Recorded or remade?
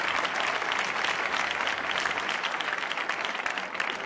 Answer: recorded